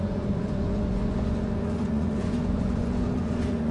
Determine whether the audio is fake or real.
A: fake